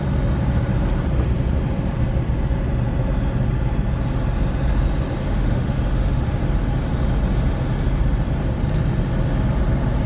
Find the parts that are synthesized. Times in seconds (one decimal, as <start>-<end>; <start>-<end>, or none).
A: 5.2-6.2